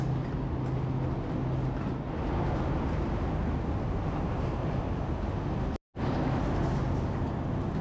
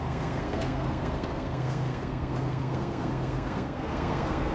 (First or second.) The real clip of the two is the first